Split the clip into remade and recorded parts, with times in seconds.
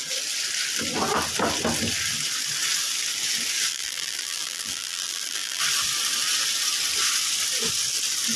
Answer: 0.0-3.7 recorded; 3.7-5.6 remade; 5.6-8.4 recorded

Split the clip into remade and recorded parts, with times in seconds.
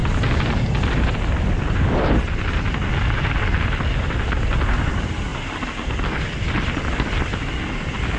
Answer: 0.0-8.2 recorded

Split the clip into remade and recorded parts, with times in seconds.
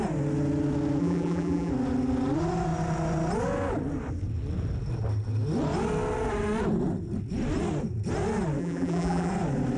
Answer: 0.0-1.0 recorded; 1.0-1.7 remade; 1.7-8.6 recorded; 8.6-9.3 remade; 9.3-9.8 recorded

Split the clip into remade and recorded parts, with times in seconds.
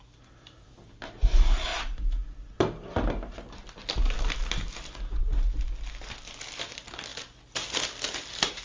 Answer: 0.0-8.6 recorded